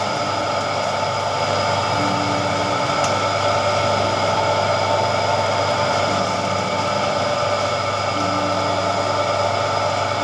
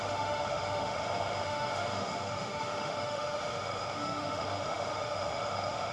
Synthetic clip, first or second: second